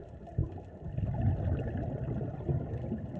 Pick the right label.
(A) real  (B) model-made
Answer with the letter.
A